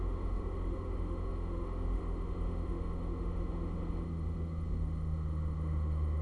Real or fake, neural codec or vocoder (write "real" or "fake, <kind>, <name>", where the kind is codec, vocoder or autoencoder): fake, autoencoder, DAC-VAE